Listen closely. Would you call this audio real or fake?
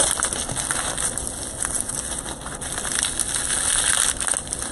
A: real